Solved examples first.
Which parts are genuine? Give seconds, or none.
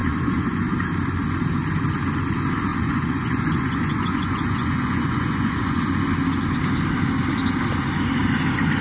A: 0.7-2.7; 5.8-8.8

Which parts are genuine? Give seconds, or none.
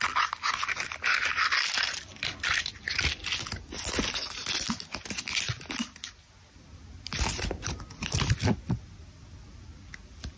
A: 0.0-10.4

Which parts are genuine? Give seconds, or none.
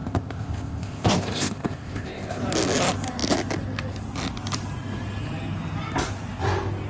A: 2.4-6.9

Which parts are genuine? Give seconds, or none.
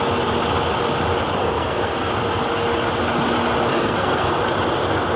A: 0.0-1.4; 2.1-3.7; 4.4-5.2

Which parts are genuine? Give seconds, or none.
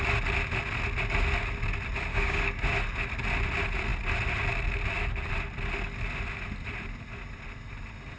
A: 0.0-2.1; 2.6-8.2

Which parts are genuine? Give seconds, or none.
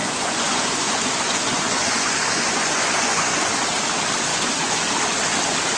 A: 3.5-4.3; 4.9-5.8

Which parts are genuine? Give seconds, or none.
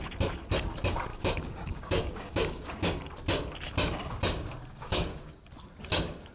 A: 0.0-1.1; 3.0-4.7; 5.4-6.3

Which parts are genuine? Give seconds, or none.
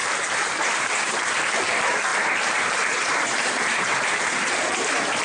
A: 1.2-2.1